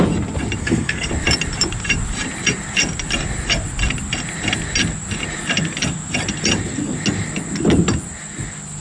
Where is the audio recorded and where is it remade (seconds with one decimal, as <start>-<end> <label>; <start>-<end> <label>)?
0.0-0.6 recorded; 0.6-1.1 remade; 1.1-8.8 recorded